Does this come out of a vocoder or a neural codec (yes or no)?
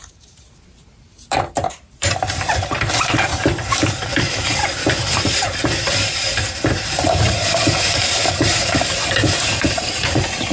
yes